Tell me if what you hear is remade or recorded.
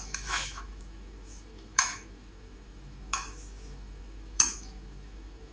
remade